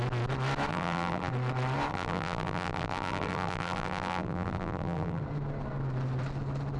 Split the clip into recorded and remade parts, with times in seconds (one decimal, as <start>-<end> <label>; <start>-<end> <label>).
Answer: 0.0-0.7 recorded; 0.7-1.3 remade; 1.3-1.9 recorded; 1.9-5.2 remade; 5.2-6.8 recorded